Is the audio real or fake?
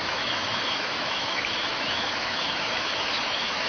fake